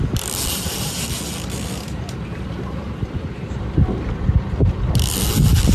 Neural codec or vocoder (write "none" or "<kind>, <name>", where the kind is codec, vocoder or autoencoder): vocoder, BigVGAN v2